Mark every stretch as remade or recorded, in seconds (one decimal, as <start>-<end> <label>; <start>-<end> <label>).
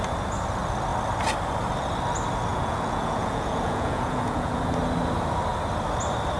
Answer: 0.0-2.5 recorded; 2.5-4.6 remade; 4.6-6.4 recorded